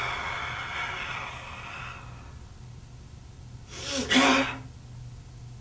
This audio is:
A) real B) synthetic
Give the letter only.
A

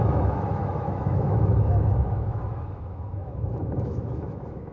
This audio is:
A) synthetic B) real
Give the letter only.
A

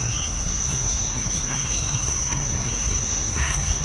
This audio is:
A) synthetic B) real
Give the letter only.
A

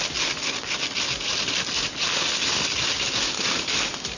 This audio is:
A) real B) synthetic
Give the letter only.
A